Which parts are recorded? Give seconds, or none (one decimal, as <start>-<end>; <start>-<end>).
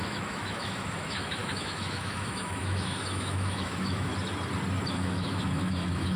4.1-4.9